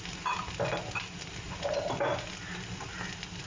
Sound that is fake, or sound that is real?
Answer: real